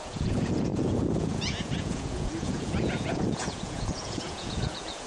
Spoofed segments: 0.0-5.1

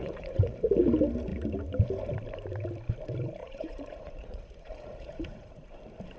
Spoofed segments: 0.0-0.7; 3.4-5.8

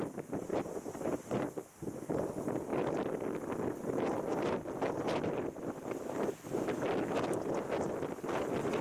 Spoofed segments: none

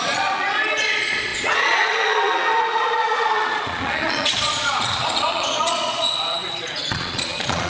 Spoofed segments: 0.0-7.7

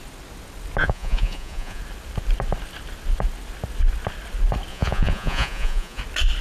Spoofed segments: 0.8-1.8; 4.7-6.0

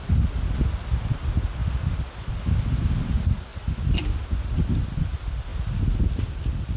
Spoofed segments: none